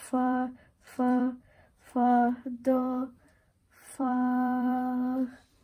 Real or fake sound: fake